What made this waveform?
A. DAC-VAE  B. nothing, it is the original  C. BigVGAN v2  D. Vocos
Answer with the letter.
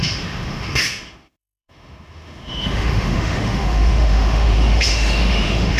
A